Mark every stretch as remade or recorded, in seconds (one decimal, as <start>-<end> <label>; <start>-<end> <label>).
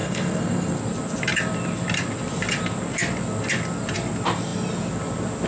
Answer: 0.0-0.8 remade; 0.8-5.5 recorded